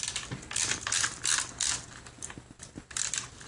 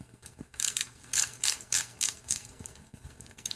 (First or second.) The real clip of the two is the first